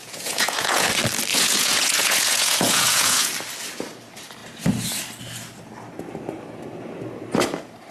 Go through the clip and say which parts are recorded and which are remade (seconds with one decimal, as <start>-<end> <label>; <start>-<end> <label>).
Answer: 0.0-0.9 remade; 0.9-1.3 recorded; 1.3-3.3 remade; 3.3-7.9 recorded